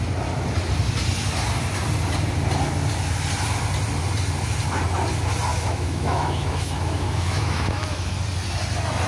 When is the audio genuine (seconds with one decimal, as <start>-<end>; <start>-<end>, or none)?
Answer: 0.0-5.5; 8.1-9.1